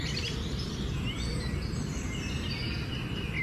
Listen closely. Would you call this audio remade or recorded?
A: recorded